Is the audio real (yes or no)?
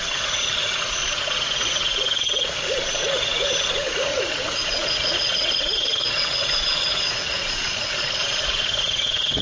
no